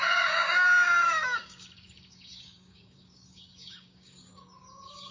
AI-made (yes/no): yes